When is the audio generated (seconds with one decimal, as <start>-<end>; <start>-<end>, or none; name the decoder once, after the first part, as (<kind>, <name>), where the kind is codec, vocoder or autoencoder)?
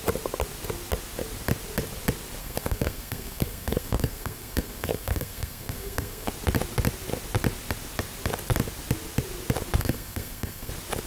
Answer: 2.4-6.3 (codec, SNAC); 9.8-10.7